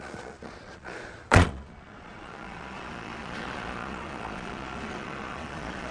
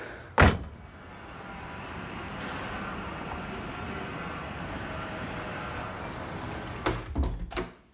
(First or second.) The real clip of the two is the second